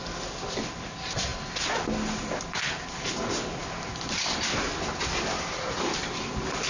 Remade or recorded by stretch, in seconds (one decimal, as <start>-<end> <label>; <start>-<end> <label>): 0.0-6.7 recorded